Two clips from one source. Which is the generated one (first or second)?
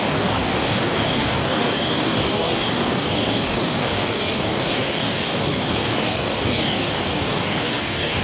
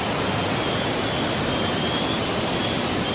first